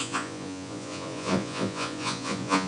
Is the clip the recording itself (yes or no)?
no